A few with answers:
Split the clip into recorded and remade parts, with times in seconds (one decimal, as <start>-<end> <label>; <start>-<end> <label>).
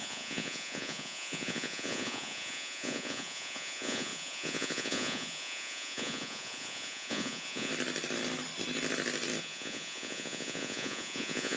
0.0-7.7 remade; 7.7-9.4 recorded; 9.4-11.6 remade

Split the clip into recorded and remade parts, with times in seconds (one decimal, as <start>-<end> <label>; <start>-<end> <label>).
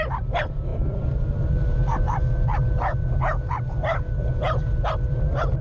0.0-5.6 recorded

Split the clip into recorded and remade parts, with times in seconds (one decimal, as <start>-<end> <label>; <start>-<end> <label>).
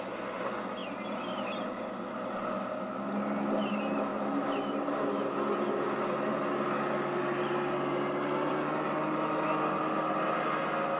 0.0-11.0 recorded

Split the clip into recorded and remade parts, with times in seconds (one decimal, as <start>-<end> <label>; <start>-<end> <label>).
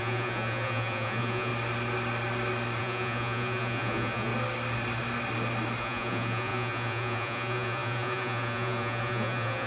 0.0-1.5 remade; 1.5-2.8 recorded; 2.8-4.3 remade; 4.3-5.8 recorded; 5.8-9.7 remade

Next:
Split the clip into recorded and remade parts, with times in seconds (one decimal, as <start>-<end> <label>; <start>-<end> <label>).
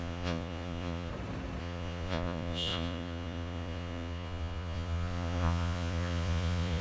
0.0-1.1 remade; 1.1-1.6 recorded; 1.6-6.8 remade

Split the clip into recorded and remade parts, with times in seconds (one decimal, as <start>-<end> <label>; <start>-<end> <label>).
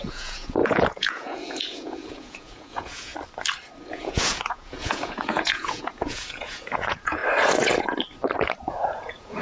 0.0-3.1 remade; 3.1-3.9 recorded; 3.9-7.2 remade; 7.2-8.7 recorded; 8.7-9.4 remade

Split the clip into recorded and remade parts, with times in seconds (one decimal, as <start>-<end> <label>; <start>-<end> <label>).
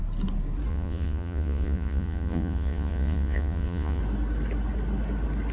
0.0-0.7 recorded; 0.7-4.0 remade; 4.0-5.5 recorded